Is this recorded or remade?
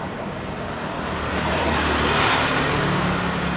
recorded